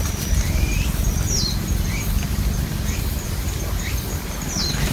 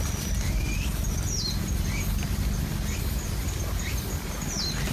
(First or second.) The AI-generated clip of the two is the first